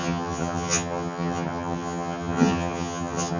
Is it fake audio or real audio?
fake